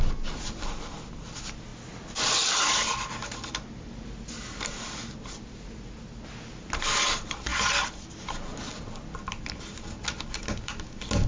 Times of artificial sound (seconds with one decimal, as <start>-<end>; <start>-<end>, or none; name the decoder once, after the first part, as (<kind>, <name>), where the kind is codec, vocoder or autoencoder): none